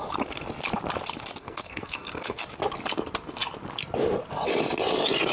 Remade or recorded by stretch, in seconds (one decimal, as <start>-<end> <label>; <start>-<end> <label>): 0.0-1.4 recorded; 1.4-2.4 remade; 2.4-5.3 recorded